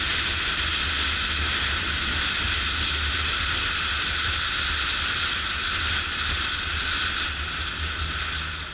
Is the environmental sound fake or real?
real